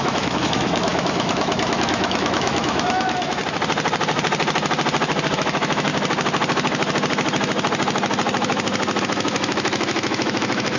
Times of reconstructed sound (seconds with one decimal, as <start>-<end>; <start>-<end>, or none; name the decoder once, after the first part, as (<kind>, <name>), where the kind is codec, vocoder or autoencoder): 0.0-3.4 (autoencoder, DAC-VAE); 5.3-5.9; 9.0-10.8